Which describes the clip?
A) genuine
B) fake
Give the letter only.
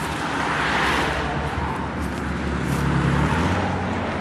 A